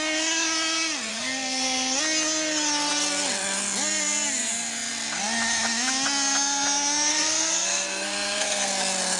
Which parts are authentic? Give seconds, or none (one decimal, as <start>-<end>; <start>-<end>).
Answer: 0.0-1.1; 2.0-7.1; 8.7-9.2